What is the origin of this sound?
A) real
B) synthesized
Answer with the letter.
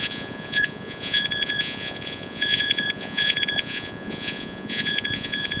B